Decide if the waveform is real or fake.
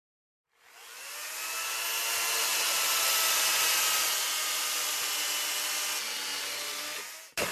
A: real